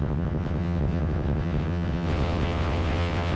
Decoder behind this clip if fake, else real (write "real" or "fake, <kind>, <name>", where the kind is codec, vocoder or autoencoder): fake, vocoder, WaveNeXt